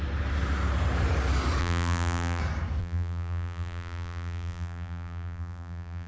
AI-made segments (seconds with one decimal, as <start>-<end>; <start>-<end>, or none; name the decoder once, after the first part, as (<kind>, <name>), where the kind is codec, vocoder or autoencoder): 1.6-2.4 (vocoder, BigVGAN v2); 2.8-6.1